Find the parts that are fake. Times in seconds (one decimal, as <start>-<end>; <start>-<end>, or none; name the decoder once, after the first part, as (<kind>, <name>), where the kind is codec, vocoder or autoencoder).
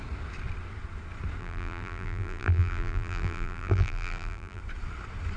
1.4-4.6 (vocoder, BigVGAN v2)